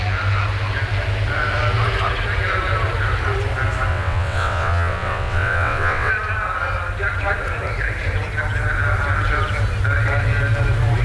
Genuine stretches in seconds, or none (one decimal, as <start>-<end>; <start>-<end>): 0.0-3.9; 6.1-11.0